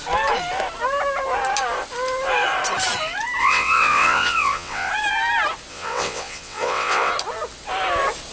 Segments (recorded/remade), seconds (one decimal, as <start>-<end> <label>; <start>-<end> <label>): 0.0-3.4 recorded; 3.4-4.9 remade; 4.9-5.7 recorded; 5.7-7.1 remade; 7.1-8.3 recorded